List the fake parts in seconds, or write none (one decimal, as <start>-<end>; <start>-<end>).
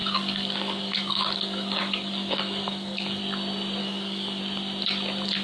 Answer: 0.0-3.2; 3.8-4.4